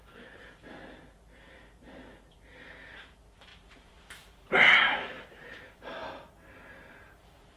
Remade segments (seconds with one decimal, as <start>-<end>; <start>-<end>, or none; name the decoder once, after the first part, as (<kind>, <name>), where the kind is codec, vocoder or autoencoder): 0.0-6.0 (vocoder, BigVGAN v2); 6.9-7.6